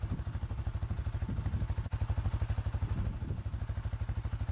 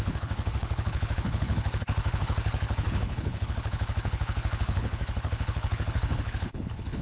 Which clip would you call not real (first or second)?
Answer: second